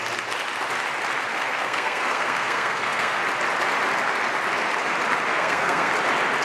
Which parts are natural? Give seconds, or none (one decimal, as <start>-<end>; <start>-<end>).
0.0-1.3; 3.2-5.3; 5.9-6.4